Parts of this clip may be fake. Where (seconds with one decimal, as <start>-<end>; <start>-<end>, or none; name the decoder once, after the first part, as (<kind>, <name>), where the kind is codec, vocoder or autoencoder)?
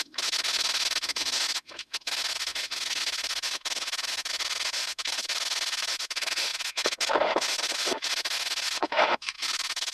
0.0-9.9 (autoencoder, DAC-VAE)